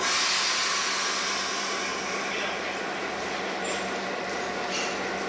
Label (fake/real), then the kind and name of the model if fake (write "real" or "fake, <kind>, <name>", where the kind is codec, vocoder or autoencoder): real